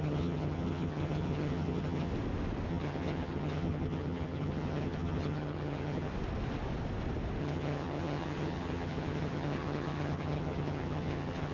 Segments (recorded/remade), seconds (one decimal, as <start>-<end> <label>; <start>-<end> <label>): 0.0-2.1 remade; 2.1-2.7 recorded; 2.7-6.1 remade; 6.1-7.4 recorded; 7.4-11.5 remade

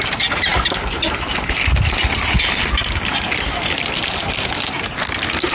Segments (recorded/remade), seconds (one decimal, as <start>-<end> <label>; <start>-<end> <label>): 0.0-5.5 recorded